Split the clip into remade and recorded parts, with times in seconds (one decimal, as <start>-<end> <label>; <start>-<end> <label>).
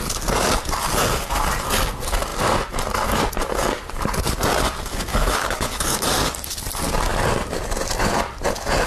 0.0-5.1 recorded; 5.1-6.0 remade; 6.0-8.9 recorded